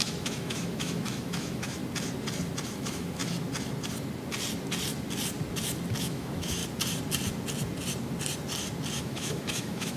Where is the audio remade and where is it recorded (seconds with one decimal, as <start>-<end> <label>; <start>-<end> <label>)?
0.0-1.8 remade; 1.8-2.7 recorded; 2.7-3.2 remade; 3.2-6.0 recorded; 6.0-6.6 remade; 6.6-9.0 recorded; 9.0-10.0 remade